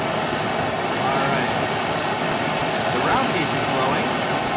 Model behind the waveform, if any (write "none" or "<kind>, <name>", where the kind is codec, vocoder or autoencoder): none